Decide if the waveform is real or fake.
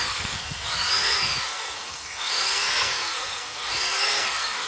fake